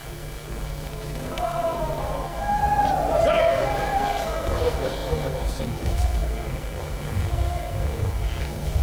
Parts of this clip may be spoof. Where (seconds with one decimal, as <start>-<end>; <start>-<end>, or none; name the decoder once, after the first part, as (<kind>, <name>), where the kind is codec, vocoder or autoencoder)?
0.0-2.6 (codec, SNAC); 3.3-8.8